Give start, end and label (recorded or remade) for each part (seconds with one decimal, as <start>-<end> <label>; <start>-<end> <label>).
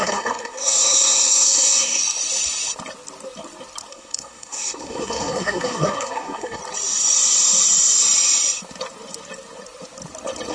0.0-2.0 remade; 2.0-3.9 recorded; 3.9-6.6 remade; 6.6-10.5 recorded